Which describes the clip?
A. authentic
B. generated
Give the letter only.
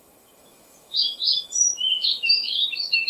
B